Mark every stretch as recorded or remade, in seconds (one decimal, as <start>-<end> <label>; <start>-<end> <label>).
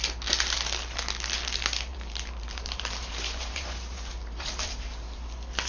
0.0-1.9 recorded; 1.9-5.3 remade; 5.3-5.7 recorded